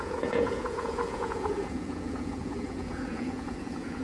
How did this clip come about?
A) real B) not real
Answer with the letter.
B